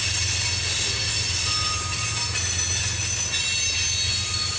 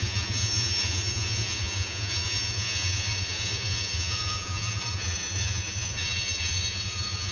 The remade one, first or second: second